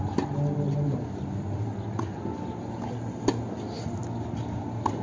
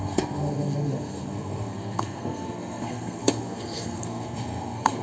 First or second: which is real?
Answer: first